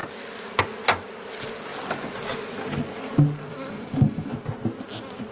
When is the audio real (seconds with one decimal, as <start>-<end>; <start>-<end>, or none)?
0.0-3.5; 4.3-5.3